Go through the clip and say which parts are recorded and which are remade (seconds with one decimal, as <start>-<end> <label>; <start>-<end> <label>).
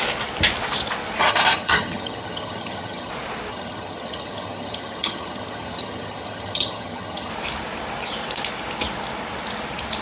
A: 0.0-1.2 recorded; 1.2-3.1 remade; 3.1-3.5 recorded; 3.5-7.3 remade; 7.3-10.0 recorded